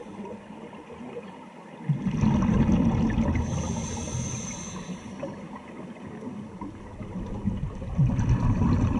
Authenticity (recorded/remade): recorded